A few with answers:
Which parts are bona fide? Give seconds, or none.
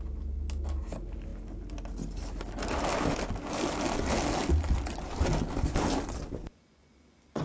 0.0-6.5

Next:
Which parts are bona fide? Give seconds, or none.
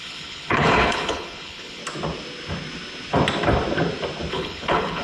1.8-4.3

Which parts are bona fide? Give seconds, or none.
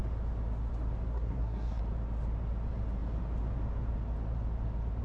0.0-1.1; 1.8-5.0